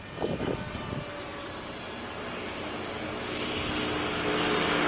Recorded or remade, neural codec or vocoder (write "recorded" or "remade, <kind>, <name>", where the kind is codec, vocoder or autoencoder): recorded